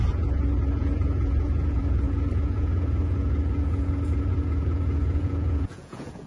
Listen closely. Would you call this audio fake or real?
fake